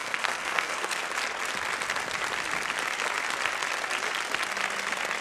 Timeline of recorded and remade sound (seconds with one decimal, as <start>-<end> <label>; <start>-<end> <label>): 0.0-1.1 remade; 1.1-5.2 recorded